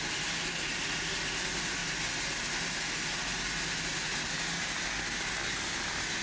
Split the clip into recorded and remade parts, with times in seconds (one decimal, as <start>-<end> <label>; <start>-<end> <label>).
0.0-6.2 recorded